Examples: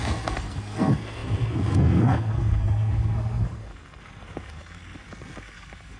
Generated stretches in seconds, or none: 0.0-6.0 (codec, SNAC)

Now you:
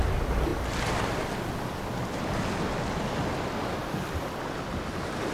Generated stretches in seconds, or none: none

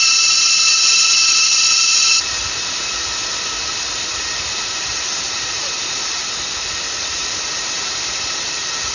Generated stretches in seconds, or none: 0.0-2.4 (vocoder, BigVGAN v2); 4.8-6.2; 7.0-8.9